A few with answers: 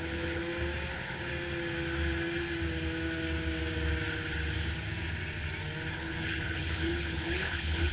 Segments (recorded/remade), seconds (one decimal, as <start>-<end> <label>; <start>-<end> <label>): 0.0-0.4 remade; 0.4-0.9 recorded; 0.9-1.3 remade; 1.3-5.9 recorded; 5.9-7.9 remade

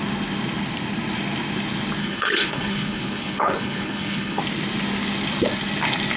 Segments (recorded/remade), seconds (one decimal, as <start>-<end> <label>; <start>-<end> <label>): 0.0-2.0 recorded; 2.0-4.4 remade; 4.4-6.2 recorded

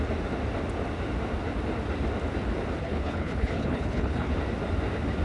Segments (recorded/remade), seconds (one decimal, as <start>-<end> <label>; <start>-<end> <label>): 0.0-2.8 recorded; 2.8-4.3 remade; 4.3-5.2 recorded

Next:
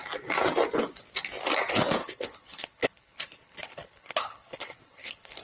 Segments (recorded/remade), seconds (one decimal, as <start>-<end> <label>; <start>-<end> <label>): 0.0-2.0 recorded; 2.0-5.4 remade

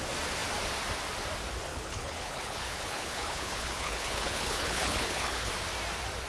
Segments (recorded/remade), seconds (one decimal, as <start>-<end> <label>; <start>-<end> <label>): 0.0-1.7 recorded; 1.7-5.5 remade; 5.5-6.3 recorded